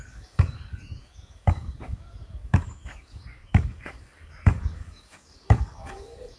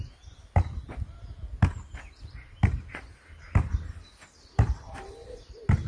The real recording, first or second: second